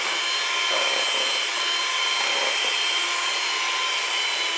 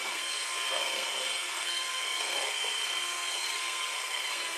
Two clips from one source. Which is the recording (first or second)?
first